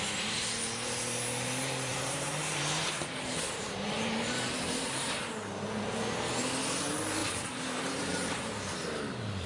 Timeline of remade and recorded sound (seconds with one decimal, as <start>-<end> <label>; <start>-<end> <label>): 0.0-1.9 recorded; 1.9-6.3 remade; 6.3-7.2 recorded; 7.2-8.4 remade; 8.4-9.5 recorded